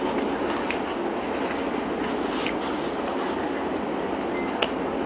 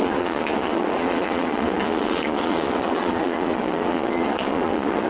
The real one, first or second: first